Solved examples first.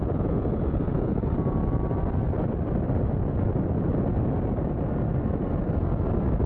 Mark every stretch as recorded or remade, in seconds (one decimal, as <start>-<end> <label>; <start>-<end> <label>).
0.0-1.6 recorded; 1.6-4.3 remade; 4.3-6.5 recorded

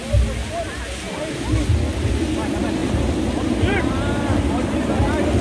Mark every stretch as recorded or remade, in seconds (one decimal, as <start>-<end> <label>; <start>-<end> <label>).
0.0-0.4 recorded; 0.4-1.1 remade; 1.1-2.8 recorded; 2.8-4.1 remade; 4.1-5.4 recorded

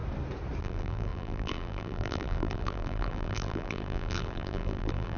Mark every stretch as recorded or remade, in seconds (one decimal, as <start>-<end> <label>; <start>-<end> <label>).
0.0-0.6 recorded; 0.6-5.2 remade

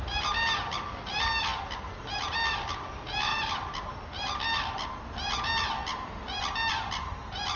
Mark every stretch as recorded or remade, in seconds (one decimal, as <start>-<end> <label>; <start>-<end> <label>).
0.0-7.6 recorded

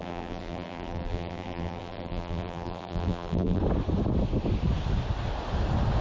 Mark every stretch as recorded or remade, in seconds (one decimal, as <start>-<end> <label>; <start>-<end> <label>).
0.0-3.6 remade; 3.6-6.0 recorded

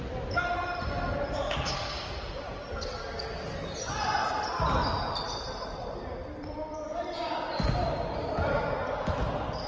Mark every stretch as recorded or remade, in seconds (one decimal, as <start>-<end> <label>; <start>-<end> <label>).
0.0-6.2 recorded; 6.2-8.3 remade; 8.3-9.7 recorded

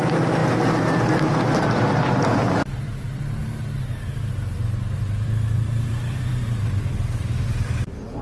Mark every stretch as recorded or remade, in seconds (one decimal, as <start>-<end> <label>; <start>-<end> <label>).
0.0-0.4 remade; 0.4-2.2 recorded; 2.2-3.4 remade; 3.4-4.3 recorded; 4.3-8.2 remade

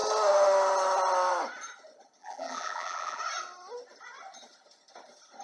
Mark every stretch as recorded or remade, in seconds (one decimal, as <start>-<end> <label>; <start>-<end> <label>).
0.0-2.2 recorded; 2.2-3.2 remade; 3.2-5.4 recorded